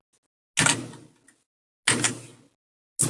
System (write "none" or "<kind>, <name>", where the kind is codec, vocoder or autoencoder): none